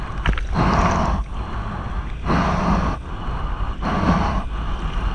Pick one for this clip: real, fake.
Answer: real